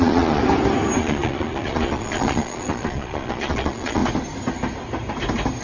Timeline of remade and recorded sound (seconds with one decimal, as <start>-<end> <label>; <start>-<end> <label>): 0.0-0.4 remade; 0.4-1.0 recorded; 1.0-4.0 remade; 4.0-5.6 recorded